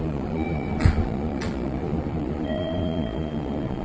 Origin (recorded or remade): remade